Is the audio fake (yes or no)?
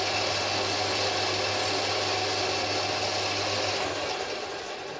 no